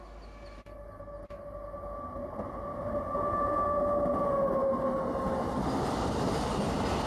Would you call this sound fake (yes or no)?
no